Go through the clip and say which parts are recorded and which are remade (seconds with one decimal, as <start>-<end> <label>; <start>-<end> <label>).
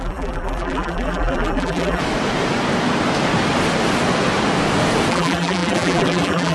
0.0-2.0 remade; 2.0-5.1 recorded; 5.1-6.5 remade